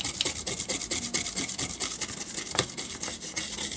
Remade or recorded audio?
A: recorded